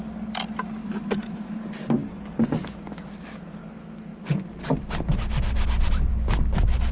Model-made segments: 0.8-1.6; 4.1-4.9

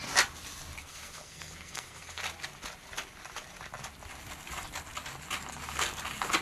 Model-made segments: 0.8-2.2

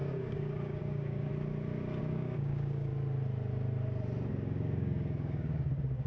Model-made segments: 0.0-1.3; 2.0-2.9; 4.3-6.1

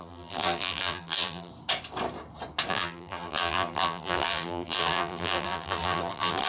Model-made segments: 0.0-1.5; 2.7-6.5

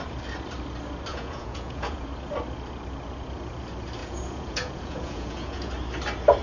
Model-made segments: 1.1-2.1; 4.0-5.7